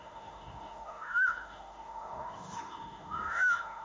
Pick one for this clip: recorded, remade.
remade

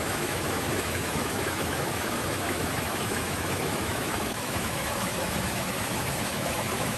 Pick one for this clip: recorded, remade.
remade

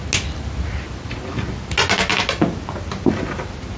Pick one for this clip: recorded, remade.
recorded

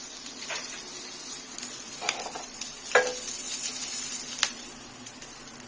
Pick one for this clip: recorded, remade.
recorded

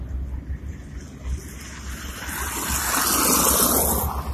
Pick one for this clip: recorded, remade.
recorded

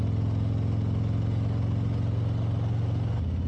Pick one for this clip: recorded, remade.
recorded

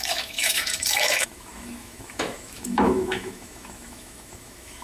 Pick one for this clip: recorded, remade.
remade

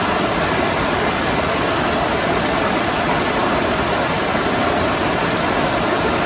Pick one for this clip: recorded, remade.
recorded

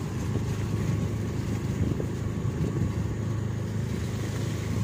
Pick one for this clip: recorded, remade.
recorded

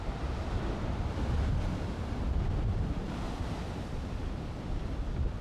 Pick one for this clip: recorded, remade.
recorded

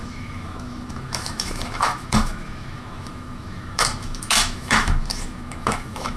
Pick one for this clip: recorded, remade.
remade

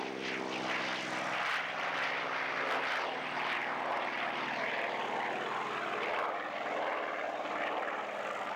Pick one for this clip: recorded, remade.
recorded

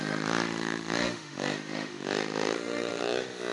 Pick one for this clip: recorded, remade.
remade